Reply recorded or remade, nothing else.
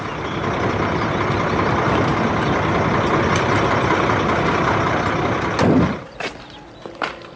recorded